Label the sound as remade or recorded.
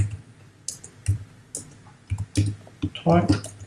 recorded